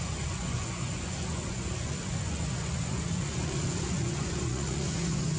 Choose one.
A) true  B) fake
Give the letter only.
B